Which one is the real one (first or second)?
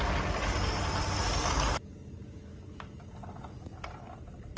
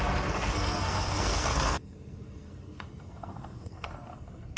first